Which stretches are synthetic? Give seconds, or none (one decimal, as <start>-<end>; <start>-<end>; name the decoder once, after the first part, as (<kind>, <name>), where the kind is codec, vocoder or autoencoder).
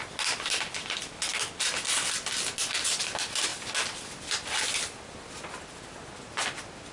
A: none